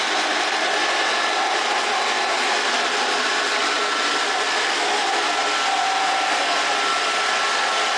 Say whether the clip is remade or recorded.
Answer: recorded